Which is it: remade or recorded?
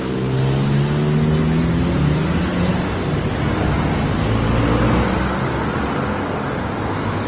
recorded